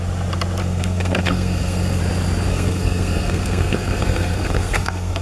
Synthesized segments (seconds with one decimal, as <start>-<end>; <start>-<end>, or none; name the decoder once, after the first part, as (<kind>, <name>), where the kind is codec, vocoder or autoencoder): 0.6-2.0 (codec, SNAC); 2.5-5.2

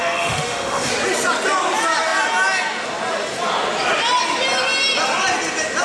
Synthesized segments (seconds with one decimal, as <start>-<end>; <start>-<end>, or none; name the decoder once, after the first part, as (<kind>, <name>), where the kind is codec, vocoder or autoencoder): 0.0-0.9 (autoencoder, DAC-VAE)